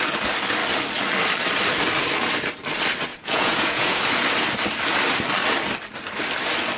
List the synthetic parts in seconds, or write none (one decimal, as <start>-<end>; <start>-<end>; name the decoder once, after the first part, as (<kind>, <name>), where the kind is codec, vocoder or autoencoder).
3.1-4.0 (vocoder, Vocos)